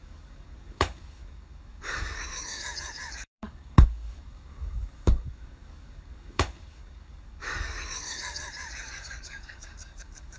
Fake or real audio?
fake